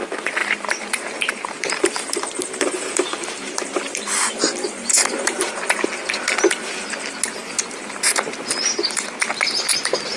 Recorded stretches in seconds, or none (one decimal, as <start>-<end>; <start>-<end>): 0.0-0.4; 5.5-10.2